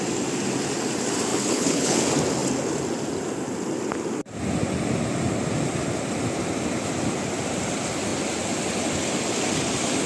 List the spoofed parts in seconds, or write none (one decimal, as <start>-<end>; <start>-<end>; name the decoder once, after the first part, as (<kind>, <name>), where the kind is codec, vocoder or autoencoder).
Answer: 1.3-2.0 (codec, HILCodec)